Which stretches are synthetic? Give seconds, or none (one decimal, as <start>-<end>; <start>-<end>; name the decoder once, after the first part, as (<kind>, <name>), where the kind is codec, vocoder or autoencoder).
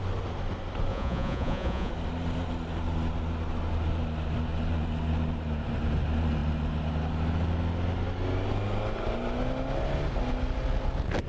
0.9-1.9 (vocoder, Vocos)